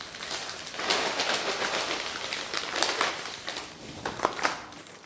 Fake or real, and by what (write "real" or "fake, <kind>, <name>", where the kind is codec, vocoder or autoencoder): real